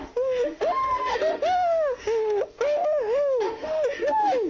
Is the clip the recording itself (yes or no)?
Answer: no